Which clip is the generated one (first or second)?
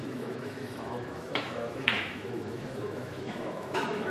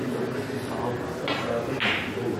first